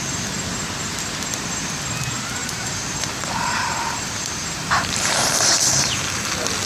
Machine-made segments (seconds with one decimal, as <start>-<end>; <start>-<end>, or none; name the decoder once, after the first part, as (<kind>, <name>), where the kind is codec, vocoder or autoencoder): 2.4-6.3 (vocoder, BigVGAN v2)